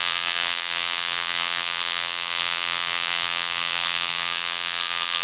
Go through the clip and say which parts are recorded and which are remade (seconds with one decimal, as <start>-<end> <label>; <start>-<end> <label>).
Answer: 0.0-5.2 remade